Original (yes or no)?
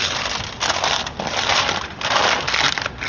yes